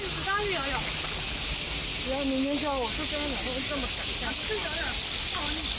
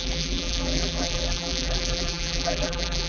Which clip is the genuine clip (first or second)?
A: first